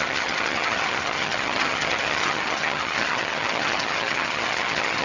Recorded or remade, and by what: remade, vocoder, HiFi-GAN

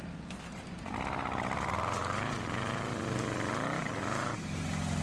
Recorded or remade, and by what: recorded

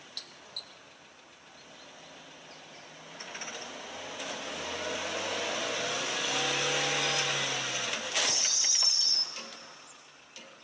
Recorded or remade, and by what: recorded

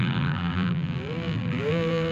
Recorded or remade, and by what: remade, vocoder, BigVGAN v2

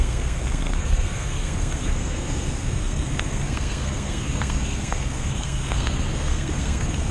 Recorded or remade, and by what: remade, codec, SNAC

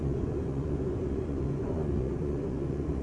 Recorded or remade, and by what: remade, vocoder, Vocos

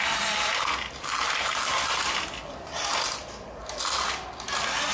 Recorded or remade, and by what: recorded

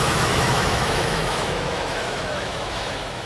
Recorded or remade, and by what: remade, autoencoder, DAC-VAE